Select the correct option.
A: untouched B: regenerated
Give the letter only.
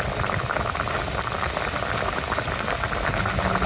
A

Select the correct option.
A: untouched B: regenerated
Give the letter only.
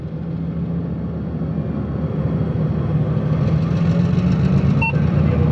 A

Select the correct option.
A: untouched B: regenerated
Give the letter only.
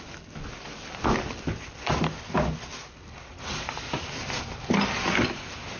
A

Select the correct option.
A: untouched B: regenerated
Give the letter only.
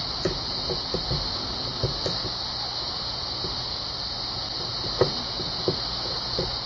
A